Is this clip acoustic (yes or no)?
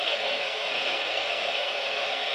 no